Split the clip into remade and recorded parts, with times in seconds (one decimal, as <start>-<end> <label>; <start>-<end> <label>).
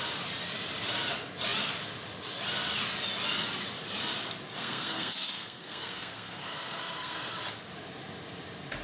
0.0-4.5 recorded; 4.5-7.4 remade; 7.4-8.8 recorded